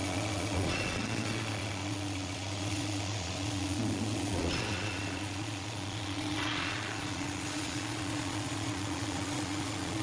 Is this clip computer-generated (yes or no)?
yes